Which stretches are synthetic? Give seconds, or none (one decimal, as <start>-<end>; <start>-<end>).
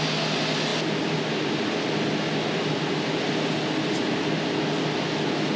none